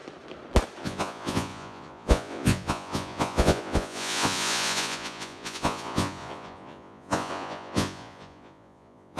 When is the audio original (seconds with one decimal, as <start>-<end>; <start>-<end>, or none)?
0.0-0.8